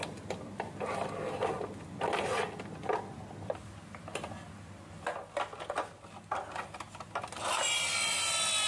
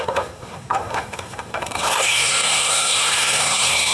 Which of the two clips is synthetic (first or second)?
second